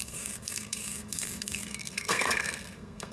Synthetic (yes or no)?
yes